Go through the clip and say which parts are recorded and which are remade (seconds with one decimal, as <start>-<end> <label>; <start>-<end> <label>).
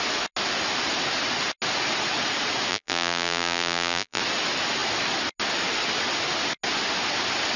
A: 0.0-2.7 recorded; 2.7-4.2 remade; 4.2-7.6 recorded